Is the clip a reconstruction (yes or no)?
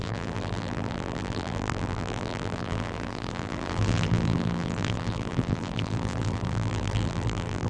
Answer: yes